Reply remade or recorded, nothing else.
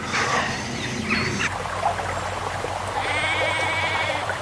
recorded